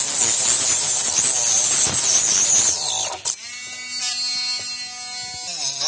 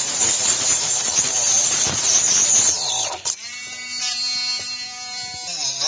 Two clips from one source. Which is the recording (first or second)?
first